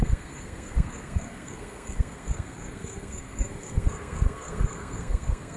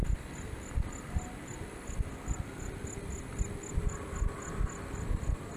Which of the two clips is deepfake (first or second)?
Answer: first